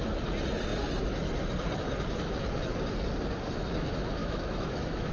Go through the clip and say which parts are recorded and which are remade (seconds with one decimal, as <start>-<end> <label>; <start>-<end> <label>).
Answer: 0.0-4.2 recorded; 4.2-5.1 remade